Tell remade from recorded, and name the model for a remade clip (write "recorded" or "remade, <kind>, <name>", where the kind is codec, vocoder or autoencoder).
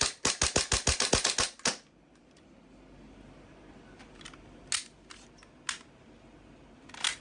recorded